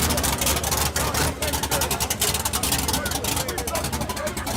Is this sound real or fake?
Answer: real